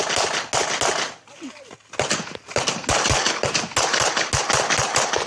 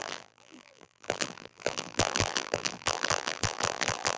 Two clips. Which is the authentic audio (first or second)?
first